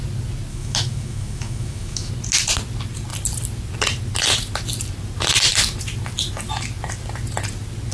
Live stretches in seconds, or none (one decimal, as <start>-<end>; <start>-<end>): 0.0-0.5; 2.1-7.9